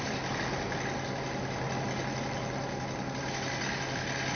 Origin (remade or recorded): recorded